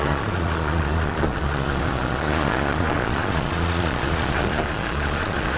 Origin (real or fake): fake